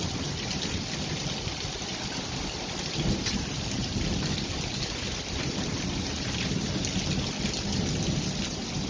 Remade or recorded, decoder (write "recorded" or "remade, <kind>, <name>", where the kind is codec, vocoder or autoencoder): recorded